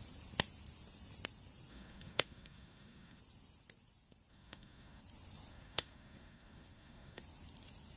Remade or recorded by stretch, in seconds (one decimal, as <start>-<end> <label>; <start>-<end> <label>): 0.0-1.7 recorded; 1.7-3.2 remade; 3.2-4.3 recorded; 4.3-5.0 remade; 5.0-5.5 recorded; 5.5-7.2 remade; 7.2-8.0 recorded